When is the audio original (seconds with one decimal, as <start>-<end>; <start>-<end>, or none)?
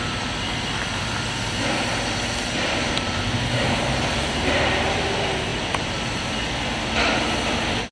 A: 0.0-2.6; 5.1-5.5; 6.4-7.9